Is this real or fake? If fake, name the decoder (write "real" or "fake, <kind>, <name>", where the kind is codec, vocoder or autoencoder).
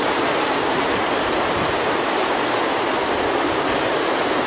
fake, vocoder, BigVGAN v2